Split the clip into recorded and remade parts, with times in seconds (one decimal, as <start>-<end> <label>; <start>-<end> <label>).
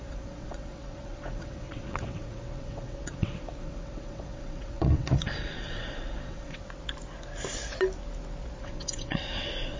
0.0-6.6 remade; 6.6-8.6 recorded; 8.6-9.8 remade